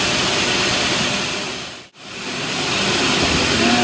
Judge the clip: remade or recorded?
recorded